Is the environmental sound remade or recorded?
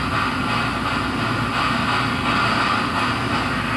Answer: recorded